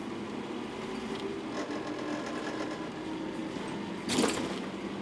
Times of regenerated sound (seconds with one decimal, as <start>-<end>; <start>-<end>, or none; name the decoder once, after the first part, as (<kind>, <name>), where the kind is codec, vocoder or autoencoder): none